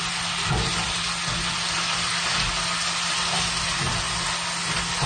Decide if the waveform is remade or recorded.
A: recorded